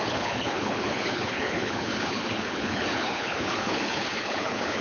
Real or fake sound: fake